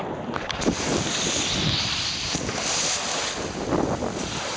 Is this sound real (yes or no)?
yes